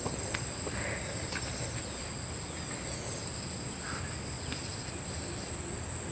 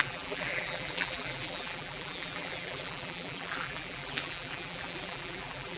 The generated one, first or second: second